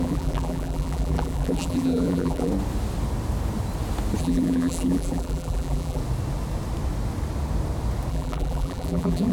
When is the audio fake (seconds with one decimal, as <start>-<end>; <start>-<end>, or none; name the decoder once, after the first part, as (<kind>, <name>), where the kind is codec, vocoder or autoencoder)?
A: 0.0-2.5 (vocoder, BigVGAN v2); 4.2-6.0; 8.1-9.3